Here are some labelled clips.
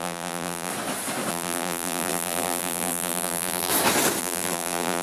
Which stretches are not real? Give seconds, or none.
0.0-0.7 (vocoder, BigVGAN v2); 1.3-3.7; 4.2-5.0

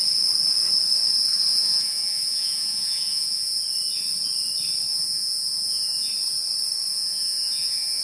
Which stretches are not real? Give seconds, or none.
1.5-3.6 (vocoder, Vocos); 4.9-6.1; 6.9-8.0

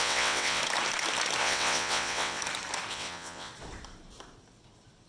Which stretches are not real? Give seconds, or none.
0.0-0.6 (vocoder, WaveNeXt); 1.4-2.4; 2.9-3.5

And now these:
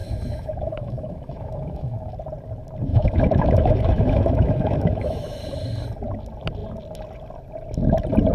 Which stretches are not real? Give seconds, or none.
0.0-2.1 (autoencoder, DAC-VAE); 2.9-5.4

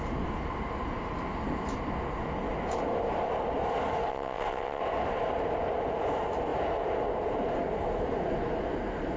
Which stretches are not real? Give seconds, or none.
4.1-4.8 (vocoder, WaveNeXt)

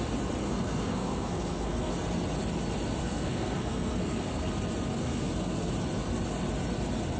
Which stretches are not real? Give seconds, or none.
0.4-1.9 (codec, SNAC); 3.0-4.5; 5.0-5.7

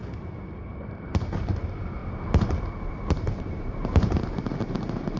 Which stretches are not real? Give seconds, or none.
0.9-2.0 (vocoder, BigVGAN v2); 2.8-5.2